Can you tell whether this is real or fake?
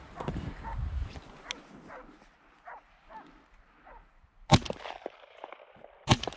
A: real